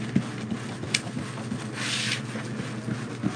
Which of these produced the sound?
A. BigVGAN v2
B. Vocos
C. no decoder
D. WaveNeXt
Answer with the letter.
C